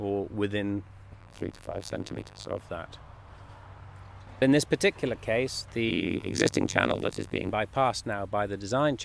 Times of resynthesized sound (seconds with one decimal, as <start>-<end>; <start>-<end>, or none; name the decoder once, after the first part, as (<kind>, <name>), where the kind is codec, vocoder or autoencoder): 1.2-2.6 (vocoder, BigVGAN v2); 5.9-7.5